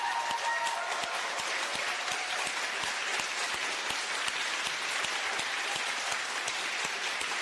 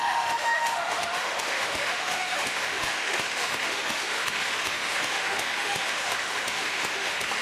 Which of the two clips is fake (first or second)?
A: second